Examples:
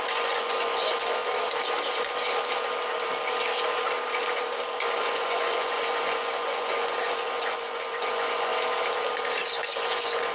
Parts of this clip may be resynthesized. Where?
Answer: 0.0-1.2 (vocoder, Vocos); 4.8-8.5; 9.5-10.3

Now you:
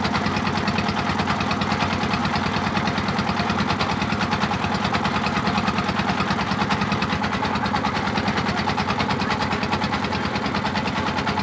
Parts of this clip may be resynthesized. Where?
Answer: none

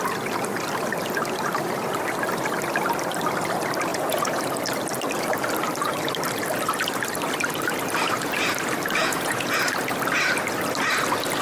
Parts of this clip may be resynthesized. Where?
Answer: 3.9-4.4 (vocoder, Vocos); 9.0-9.6

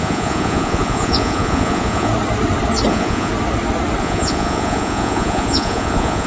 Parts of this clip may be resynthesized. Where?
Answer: 0.0-2.1 (vocoder, Vocos); 2.9-3.3; 4.0-6.3

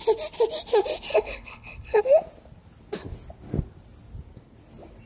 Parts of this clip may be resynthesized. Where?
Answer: 1.1-2.0 (codec, HILCodec)

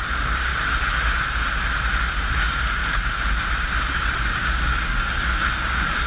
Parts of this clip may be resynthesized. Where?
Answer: 0.0-0.5 (codec, DAC); 2.4-2.8; 4.3-6.1

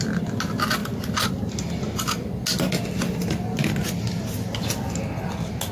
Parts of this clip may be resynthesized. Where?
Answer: none